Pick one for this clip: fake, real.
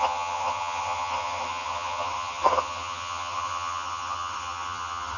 fake